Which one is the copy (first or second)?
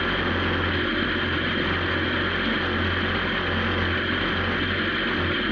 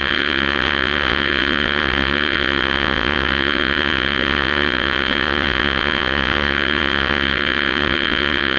second